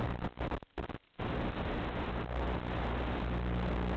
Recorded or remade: recorded